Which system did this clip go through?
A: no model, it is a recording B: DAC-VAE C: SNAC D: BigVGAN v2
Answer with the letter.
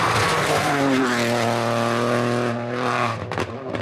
A